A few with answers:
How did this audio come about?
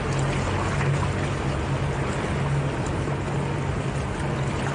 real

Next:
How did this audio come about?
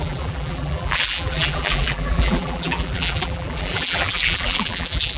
fake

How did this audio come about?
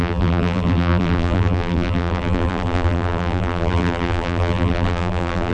fake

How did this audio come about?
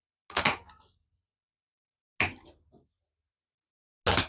real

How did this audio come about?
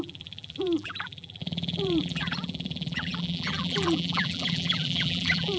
fake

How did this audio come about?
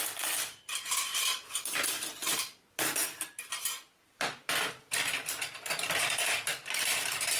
fake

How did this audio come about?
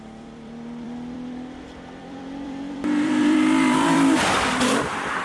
fake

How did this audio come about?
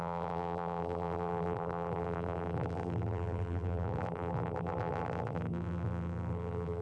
fake